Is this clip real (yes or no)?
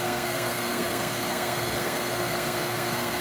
no